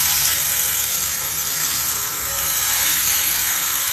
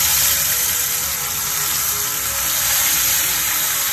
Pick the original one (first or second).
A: second